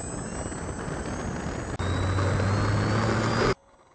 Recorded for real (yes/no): yes